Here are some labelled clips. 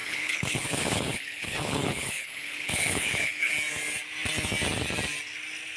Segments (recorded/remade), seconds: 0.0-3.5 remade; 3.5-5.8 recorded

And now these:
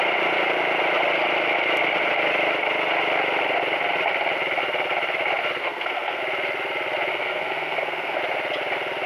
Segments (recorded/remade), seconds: 0.0-5.6 recorded; 5.6-6.2 remade; 6.2-7.1 recorded; 7.1-8.2 remade; 8.2-9.1 recorded

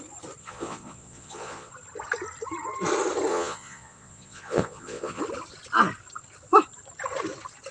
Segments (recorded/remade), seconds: 0.0-0.4 recorded; 0.4-1.7 remade; 1.7-3.3 recorded; 3.3-5.2 remade; 5.2-7.7 recorded

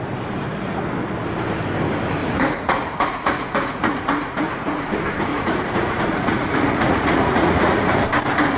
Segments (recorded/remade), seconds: 0.0-2.2 recorded; 2.2-4.8 remade; 4.8-5.3 recorded; 5.3-7.9 remade; 7.9-8.6 recorded

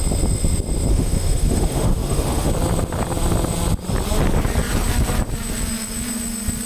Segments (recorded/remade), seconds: 0.0-0.9 recorded; 0.9-2.5 remade; 2.5-6.7 recorded